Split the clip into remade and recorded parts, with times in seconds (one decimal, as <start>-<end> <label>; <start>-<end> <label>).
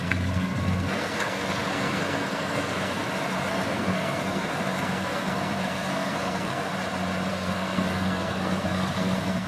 0.0-3.0 remade; 3.0-3.5 recorded; 3.5-6.7 remade; 6.7-7.3 recorded; 7.3-9.5 remade